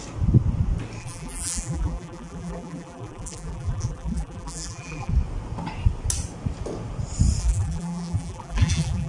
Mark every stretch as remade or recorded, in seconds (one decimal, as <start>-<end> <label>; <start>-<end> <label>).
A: 0.0-1.0 recorded; 1.0-5.1 remade; 5.1-7.4 recorded; 7.4-9.1 remade